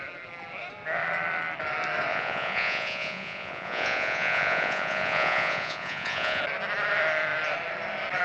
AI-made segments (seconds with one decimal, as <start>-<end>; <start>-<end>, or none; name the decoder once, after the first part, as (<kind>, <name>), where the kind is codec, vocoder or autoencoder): 2.1-6.4 (vocoder, Vocos)